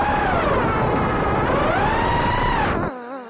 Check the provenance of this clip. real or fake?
real